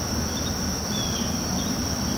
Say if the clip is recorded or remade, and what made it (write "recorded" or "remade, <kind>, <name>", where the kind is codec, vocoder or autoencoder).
recorded